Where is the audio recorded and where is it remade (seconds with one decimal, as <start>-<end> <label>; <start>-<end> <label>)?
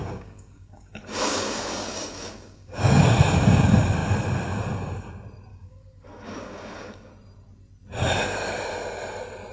0.0-3.0 remade; 3.0-5.5 recorded; 5.5-7.1 remade; 7.1-9.5 recorded